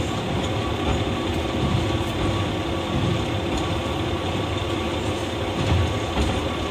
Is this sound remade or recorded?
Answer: recorded